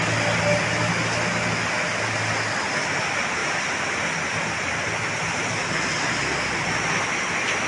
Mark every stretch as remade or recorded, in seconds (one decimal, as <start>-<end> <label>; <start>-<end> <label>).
0.0-7.7 recorded